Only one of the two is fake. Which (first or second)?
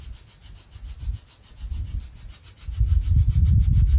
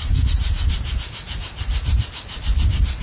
second